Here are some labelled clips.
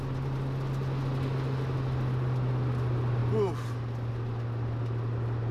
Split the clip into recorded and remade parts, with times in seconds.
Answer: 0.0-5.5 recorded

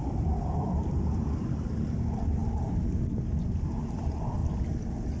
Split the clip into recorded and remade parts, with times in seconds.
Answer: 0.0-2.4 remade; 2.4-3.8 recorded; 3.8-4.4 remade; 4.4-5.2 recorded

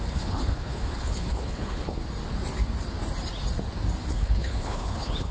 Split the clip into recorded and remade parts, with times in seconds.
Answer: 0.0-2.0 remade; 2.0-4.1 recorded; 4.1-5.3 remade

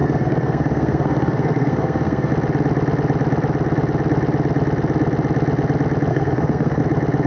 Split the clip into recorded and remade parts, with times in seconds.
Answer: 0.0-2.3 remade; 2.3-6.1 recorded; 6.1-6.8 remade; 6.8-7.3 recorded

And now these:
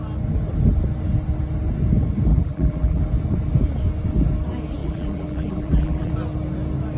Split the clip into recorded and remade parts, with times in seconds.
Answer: 0.0-2.3 recorded; 2.3-3.0 remade; 3.0-4.8 recorded; 4.8-6.1 remade; 6.1-7.0 recorded

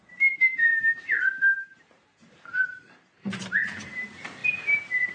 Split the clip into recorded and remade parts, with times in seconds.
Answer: 0.0-5.1 remade